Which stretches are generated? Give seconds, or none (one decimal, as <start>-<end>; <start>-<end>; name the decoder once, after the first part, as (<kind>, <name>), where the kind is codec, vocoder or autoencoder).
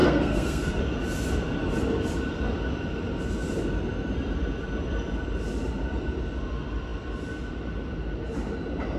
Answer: 0.0-0.8 (codec, SNAC)